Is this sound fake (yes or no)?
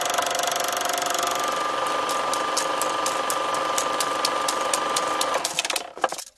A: no